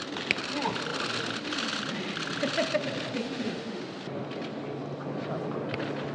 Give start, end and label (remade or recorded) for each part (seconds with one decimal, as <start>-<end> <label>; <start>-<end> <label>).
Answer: 0.0-3.2 recorded; 3.2-3.8 remade; 3.8-6.1 recorded